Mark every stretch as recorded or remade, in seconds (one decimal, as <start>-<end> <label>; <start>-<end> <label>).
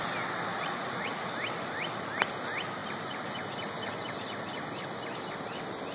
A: 0.0-0.5 recorded; 0.5-1.3 remade; 1.3-5.9 recorded